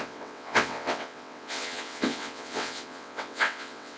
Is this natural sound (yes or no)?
no